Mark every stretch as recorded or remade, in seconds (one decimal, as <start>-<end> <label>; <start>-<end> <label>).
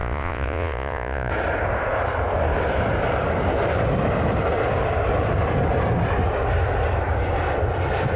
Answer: 0.0-1.3 remade; 1.3-8.2 recorded